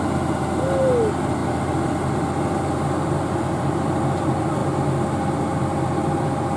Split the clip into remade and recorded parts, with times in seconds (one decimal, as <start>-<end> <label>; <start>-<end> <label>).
0.0-6.6 recorded